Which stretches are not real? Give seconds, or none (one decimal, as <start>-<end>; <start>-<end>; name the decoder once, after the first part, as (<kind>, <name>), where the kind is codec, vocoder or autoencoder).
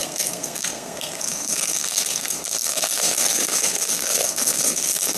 0.0-5.2 (codec, SNAC)